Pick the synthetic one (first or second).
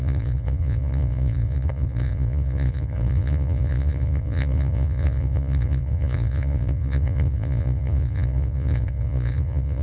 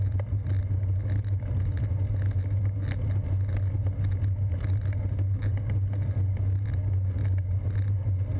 first